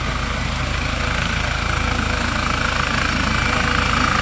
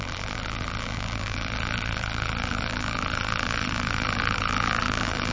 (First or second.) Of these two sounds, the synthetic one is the second